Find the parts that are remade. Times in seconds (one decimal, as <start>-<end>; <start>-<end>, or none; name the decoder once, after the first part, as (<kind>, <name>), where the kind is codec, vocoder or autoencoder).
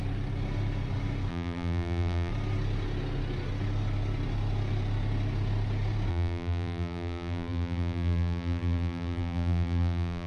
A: 1.3-2.3 (vocoder, BigVGAN v2); 6.1-10.3